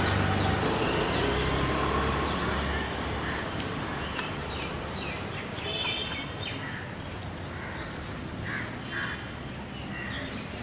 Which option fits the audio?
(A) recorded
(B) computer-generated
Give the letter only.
A